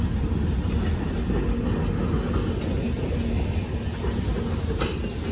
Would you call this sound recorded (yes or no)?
yes